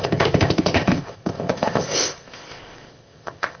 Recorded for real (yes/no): no